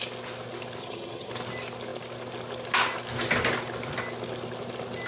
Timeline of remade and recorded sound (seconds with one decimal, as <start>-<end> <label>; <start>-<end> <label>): 0.0-0.8 recorded; 0.8-1.3 remade; 1.3-5.1 recorded